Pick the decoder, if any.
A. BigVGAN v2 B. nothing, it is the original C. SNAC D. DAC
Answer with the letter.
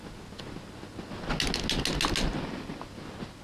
B